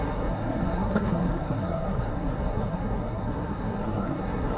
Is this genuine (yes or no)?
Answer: no